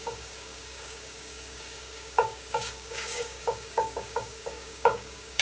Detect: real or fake fake